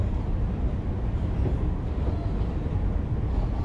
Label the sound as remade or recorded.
recorded